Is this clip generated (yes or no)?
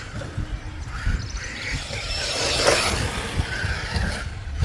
yes